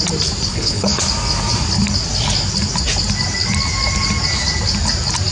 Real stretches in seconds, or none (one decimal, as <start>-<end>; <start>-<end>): 0.0-0.5; 1.0-5.3